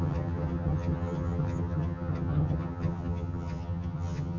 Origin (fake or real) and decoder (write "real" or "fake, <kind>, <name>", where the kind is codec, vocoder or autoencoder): fake, vocoder, HiFi-GAN